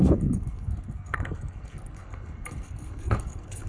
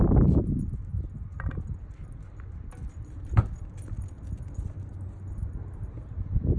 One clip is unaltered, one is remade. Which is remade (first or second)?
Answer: first